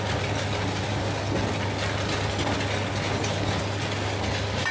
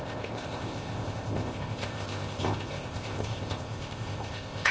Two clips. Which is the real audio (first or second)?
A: first